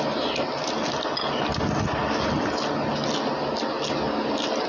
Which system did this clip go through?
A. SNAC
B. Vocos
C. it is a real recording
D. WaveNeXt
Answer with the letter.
C